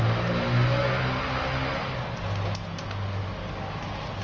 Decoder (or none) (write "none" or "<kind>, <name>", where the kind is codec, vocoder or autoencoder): none